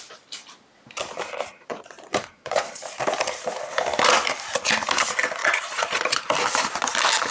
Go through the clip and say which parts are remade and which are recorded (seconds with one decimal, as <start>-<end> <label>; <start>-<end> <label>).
0.0-1.5 recorded; 1.5-2.8 remade; 2.8-5.4 recorded; 5.4-6.2 remade; 6.2-7.3 recorded